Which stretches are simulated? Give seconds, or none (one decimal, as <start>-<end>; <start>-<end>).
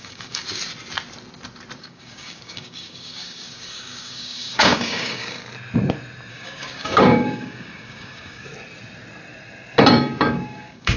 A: 0.0-0.4; 1.8-5.4; 6.3-8.5; 9.9-11.0